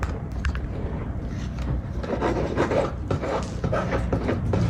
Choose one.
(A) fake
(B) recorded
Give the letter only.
A